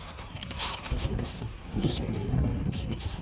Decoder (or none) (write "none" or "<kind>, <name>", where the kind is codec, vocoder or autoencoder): codec, SNAC